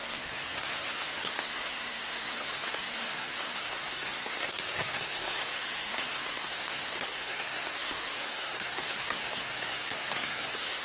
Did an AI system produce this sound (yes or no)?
yes